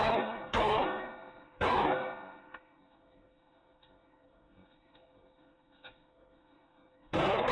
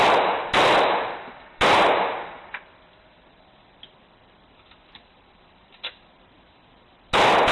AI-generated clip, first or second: first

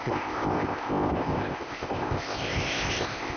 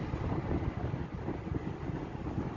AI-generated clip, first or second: first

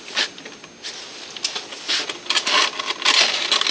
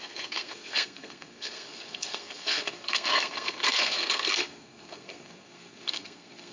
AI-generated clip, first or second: second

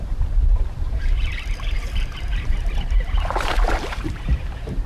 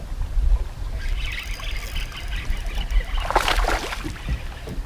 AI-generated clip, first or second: first